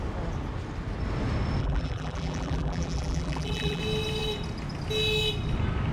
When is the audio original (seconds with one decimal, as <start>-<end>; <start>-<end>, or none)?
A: 0.0-1.6; 3.8-5.9